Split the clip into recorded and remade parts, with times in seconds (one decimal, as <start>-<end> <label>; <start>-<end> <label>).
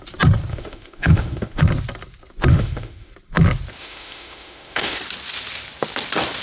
0.0-0.5 recorded; 0.5-1.6 remade; 1.6-2.5 recorded; 2.5-3.1 remade; 3.1-3.8 recorded; 3.8-5.0 remade; 5.0-6.4 recorded